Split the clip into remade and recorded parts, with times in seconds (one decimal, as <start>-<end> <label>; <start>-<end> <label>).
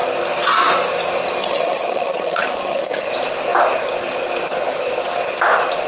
0.0-1.4 recorded; 1.4-3.1 remade; 3.1-5.9 recorded